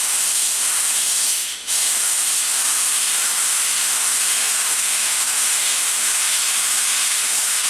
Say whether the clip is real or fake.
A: fake